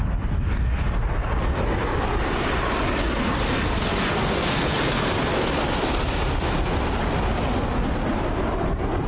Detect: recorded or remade recorded